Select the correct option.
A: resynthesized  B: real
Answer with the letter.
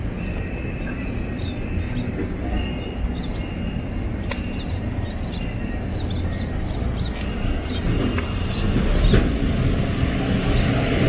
B